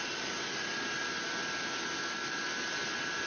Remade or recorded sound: recorded